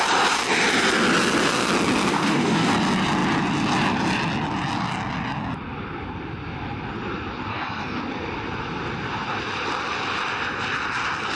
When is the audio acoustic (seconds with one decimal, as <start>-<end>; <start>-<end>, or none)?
0.0-2.1; 2.7-7.5; 8.0-11.4